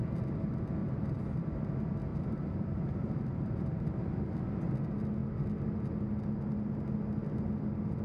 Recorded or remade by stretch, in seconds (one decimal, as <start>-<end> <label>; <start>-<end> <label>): 0.0-0.8 recorded; 0.8-1.6 remade; 1.6-2.1 recorded; 2.1-4.2 remade; 4.2-8.0 recorded